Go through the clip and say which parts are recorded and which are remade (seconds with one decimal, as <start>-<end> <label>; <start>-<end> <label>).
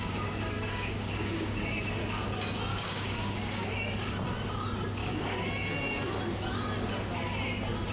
0.0-1.7 remade; 1.7-2.7 recorded; 2.7-3.7 remade; 3.7-5.0 recorded; 5.0-5.5 remade; 5.5-7.9 recorded